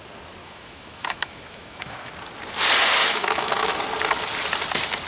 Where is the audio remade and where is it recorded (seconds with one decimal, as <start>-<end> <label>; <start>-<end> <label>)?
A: 0.0-0.4 recorded; 0.4-2.1 remade; 2.1-3.0 recorded; 3.0-3.8 remade; 3.8-5.1 recorded